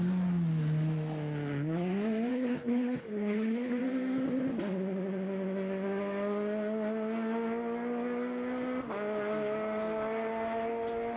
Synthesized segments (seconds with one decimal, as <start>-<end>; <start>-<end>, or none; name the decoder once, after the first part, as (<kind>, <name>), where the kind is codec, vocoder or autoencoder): 2.3-3.8 (codec, HILCodec)